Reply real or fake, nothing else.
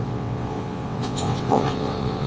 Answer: fake